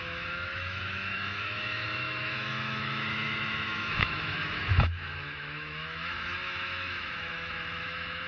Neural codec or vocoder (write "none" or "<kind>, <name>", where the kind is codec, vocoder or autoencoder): autoencoder, DAC-VAE